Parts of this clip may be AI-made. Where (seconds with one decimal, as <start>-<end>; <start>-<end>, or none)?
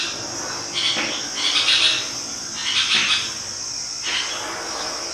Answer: none